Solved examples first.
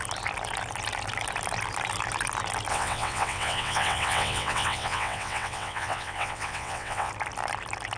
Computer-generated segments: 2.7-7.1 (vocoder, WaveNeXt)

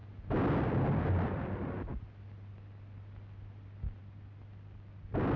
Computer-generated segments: none